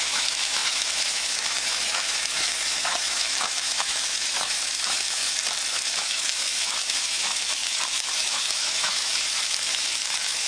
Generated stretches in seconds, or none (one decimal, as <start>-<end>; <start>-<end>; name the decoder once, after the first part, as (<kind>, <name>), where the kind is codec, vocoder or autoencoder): 0.0-5.2 (autoencoder, DAC-VAE); 5.7-10.5